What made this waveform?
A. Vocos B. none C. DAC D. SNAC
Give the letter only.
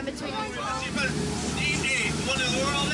B